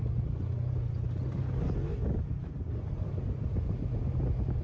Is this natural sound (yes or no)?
yes